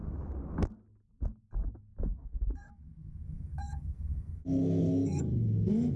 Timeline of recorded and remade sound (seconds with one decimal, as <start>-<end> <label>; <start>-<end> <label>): 0.0-2.2 recorded; 2.2-6.0 remade